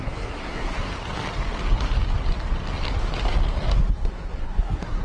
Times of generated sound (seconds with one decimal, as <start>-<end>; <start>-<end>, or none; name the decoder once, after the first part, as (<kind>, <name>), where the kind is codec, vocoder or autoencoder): 0.0-0.9 (codec, SNAC); 3.9-5.0